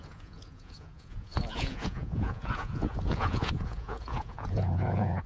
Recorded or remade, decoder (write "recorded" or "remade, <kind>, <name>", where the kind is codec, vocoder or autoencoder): remade, vocoder, Vocos